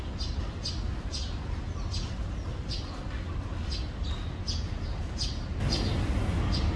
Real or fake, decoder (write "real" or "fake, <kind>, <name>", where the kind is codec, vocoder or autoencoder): real